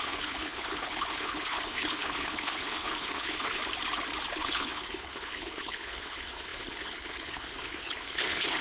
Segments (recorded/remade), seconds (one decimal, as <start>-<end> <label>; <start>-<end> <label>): 0.0-3.6 remade; 3.6-4.3 recorded; 4.3-8.6 remade